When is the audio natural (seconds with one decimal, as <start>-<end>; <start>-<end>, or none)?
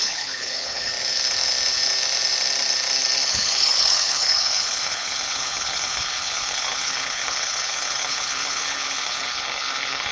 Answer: 0.9-3.3